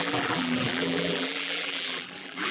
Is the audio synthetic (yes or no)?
yes